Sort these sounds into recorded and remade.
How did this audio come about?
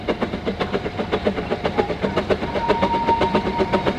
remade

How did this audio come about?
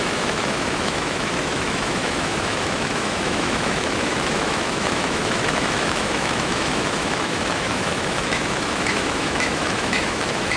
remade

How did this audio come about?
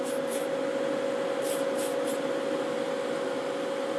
recorded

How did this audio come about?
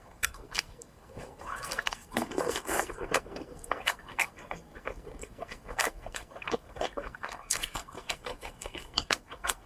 remade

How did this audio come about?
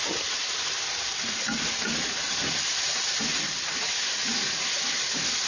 recorded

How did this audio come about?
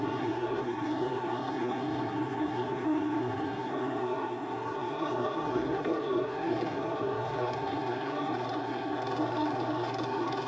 remade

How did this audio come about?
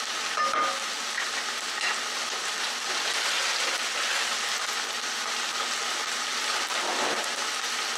recorded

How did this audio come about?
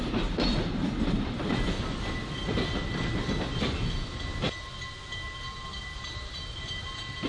recorded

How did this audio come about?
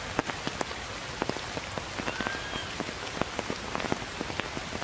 recorded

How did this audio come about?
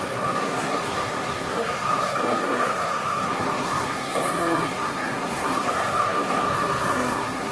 remade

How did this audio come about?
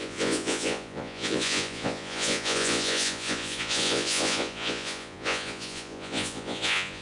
remade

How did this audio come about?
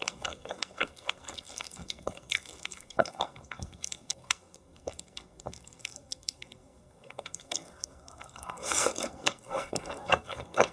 remade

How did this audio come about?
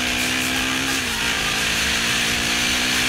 recorded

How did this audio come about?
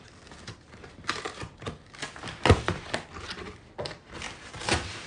recorded